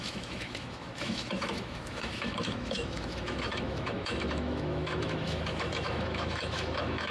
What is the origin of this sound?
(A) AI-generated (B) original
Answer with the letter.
A